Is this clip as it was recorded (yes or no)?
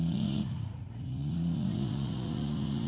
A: no